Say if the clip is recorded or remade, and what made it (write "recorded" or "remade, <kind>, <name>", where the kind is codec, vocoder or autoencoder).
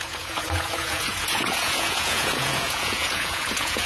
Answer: remade, vocoder, Vocos